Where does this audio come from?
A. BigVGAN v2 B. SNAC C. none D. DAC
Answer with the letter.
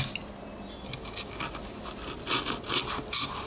C